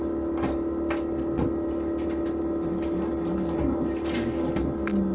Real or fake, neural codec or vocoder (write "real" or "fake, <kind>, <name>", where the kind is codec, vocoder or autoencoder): real